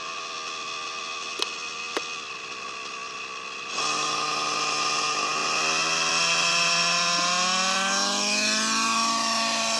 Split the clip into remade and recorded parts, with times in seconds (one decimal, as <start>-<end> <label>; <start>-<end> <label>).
0.0-9.8 recorded